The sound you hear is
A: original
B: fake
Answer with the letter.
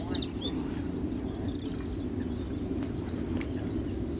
A